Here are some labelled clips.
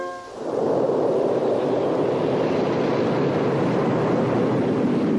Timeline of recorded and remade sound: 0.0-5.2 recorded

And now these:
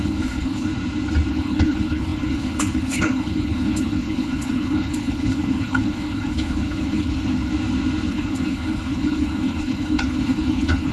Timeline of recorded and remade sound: 0.0-0.7 remade; 0.7-1.3 recorded; 1.3-7.5 remade; 7.5-8.1 recorded; 8.1-10.9 remade

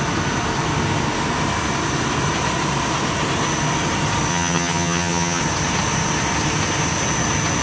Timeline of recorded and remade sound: 0.0-4.3 recorded; 4.3-5.4 remade; 5.4-7.6 recorded